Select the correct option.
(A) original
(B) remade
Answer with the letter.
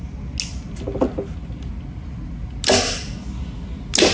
A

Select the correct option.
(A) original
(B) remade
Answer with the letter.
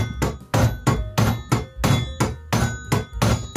A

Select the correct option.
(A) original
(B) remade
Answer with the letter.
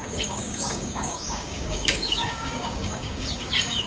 B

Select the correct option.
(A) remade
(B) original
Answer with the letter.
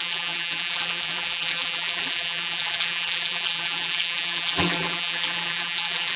A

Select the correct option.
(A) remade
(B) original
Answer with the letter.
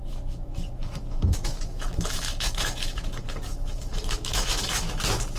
A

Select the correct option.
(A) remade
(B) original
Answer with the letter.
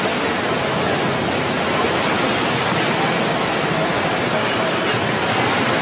B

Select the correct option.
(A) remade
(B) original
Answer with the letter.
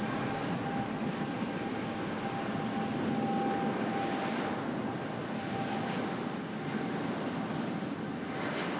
B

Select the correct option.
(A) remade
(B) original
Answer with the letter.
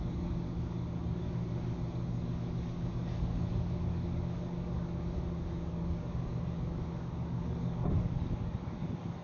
A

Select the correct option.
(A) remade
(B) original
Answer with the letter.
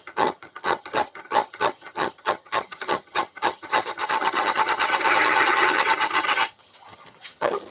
A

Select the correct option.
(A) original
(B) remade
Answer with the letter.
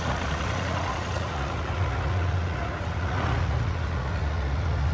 B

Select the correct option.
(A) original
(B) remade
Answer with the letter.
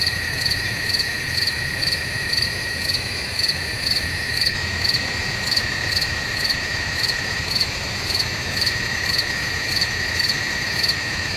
B